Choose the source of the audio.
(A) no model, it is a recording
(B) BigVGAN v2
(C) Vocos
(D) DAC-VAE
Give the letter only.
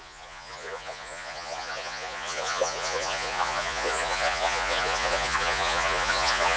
C